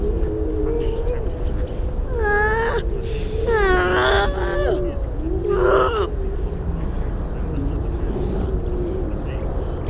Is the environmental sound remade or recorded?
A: recorded